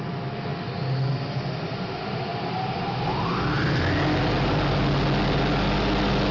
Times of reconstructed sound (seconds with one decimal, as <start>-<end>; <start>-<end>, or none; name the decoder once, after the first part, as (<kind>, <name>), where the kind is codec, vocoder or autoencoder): none